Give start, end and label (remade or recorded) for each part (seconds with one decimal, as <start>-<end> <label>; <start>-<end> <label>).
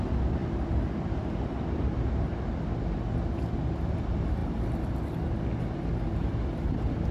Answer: 0.0-0.4 recorded; 0.4-1.1 remade; 1.1-4.4 recorded; 4.4-5.4 remade; 5.4-7.1 recorded